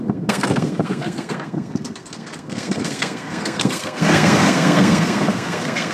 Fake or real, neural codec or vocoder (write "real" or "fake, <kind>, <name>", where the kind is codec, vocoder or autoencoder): fake, codec, SNAC